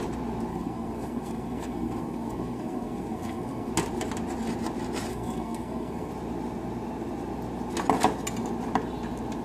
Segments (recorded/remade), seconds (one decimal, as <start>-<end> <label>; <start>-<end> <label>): 0.0-0.5 recorded; 0.5-3.7 remade; 3.7-5.1 recorded; 5.1-6.1 remade; 6.1-9.4 recorded